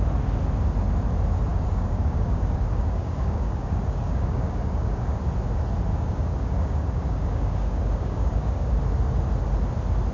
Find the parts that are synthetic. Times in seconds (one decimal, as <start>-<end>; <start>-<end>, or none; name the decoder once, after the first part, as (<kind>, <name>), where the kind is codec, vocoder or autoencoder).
1.5-5.2 (codec, DAC); 5.9-8.8